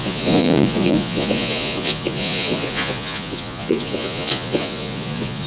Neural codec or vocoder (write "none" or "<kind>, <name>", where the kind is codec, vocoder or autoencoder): vocoder, Vocos